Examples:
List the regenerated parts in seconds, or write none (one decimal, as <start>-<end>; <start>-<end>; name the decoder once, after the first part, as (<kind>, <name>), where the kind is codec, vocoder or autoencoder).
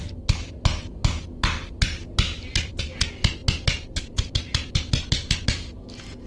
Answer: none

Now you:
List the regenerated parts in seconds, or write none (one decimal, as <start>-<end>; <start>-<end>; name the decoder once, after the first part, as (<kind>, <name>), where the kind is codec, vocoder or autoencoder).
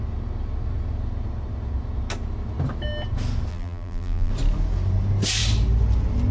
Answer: 3.5-4.3 (vocoder, BigVGAN v2)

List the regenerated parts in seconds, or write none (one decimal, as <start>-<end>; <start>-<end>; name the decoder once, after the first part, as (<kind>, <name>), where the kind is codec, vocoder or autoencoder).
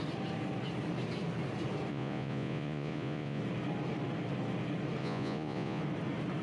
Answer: 1.9-3.4 (vocoder, Vocos); 5.0-5.8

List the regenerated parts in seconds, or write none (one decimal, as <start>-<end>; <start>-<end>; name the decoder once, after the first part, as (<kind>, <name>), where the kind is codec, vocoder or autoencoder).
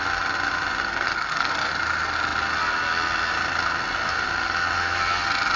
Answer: 0.8-1.5 (codec, SNAC)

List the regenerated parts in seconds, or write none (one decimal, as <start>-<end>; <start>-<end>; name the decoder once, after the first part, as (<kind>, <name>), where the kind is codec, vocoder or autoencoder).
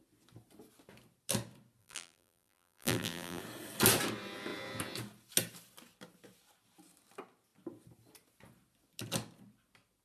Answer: 1.8-3.4 (vocoder, BigVGAN v2)